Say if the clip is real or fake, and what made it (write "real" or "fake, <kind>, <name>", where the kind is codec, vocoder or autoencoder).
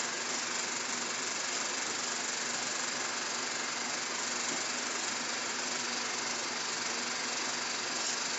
real